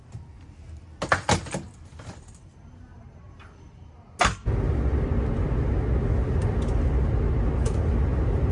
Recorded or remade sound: recorded